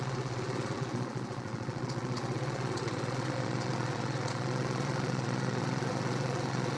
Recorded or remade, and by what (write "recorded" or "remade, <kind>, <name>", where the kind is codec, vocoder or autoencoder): remade, vocoder, Vocos